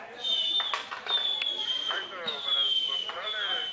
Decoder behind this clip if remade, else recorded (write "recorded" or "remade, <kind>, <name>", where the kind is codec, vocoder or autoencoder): recorded